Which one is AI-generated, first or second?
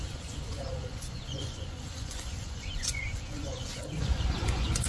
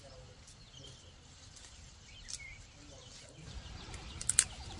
first